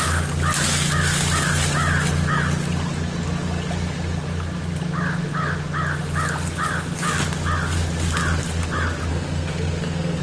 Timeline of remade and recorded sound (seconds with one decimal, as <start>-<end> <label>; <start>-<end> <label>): 0.0-9.1 recorded; 9.1-10.2 remade